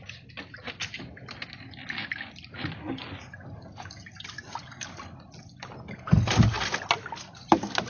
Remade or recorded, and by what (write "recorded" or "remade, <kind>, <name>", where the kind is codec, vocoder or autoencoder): recorded